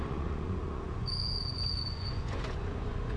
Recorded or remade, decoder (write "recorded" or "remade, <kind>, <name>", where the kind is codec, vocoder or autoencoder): remade, vocoder, Vocos